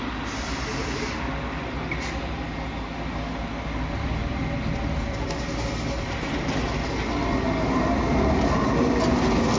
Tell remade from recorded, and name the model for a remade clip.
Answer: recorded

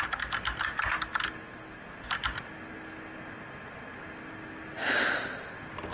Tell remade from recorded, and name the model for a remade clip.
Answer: recorded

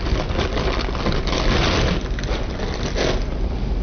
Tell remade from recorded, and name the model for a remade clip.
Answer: recorded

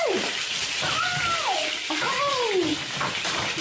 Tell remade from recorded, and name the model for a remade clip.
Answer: recorded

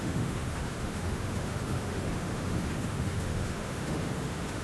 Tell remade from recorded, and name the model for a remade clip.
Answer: remade, autoencoder, DAC-VAE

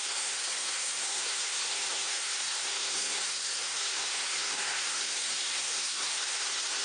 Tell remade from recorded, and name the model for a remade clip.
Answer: remade, codec, SNAC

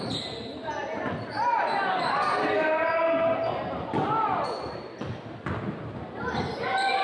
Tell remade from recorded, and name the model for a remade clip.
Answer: recorded